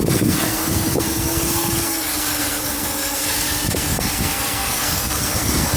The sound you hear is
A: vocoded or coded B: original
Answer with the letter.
A